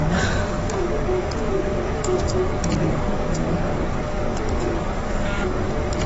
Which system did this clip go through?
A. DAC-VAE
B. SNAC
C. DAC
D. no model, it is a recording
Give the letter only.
C